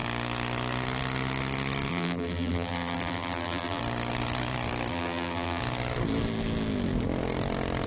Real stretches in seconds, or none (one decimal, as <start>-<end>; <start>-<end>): 0.0-1.9; 3.8-4.9; 5.6-7.9